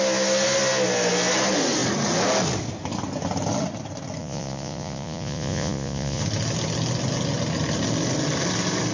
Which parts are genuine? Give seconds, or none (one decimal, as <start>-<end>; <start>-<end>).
0.0-4.2; 6.2-8.9